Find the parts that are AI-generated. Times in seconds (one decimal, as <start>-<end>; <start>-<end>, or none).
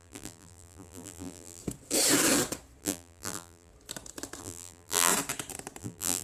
0.0-1.6; 2.8-3.7; 4.4-5.1; 5.8-6.2